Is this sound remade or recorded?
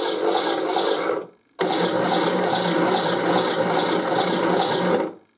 recorded